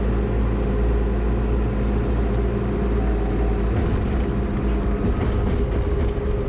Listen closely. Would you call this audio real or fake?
real